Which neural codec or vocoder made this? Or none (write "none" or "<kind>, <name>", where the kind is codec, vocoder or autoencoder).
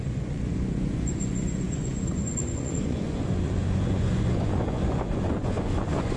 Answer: vocoder, Vocos